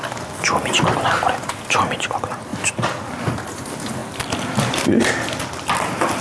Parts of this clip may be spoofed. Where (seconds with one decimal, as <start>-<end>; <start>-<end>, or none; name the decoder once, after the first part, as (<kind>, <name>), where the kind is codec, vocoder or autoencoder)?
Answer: none